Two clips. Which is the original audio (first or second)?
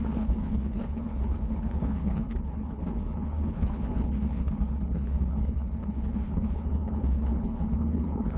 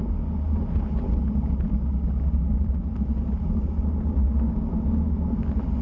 second